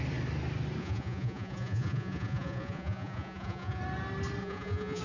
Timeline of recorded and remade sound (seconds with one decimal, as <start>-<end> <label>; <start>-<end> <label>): 0.0-0.8 recorded; 0.8-3.8 remade; 3.8-4.4 recorded; 4.4-5.0 remade